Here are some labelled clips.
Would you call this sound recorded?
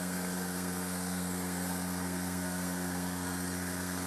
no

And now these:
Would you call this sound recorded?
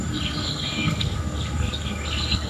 no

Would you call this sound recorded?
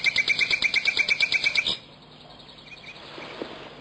yes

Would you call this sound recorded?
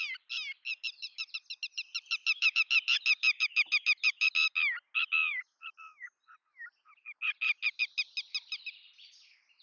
yes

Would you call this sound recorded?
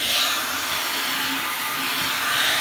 yes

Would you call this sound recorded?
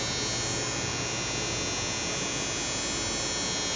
yes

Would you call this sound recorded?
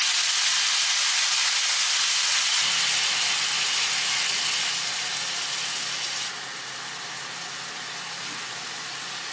yes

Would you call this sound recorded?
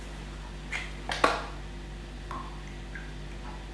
yes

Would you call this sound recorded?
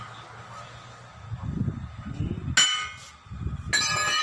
yes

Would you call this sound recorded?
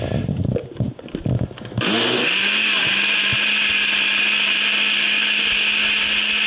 yes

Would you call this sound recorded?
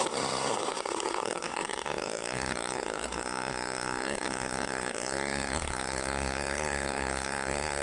no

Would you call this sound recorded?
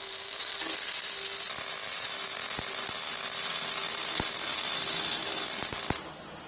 yes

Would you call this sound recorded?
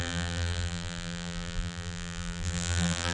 no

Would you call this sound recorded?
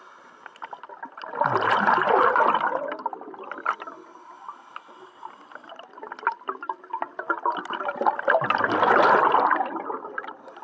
yes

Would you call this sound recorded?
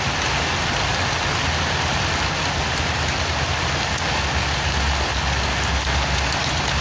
yes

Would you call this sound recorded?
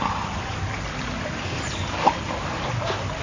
yes